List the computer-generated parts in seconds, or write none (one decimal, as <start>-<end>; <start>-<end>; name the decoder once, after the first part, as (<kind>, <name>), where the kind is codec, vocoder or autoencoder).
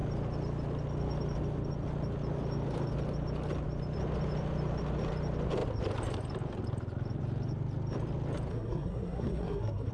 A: 8.5-9.9 (codec, SNAC)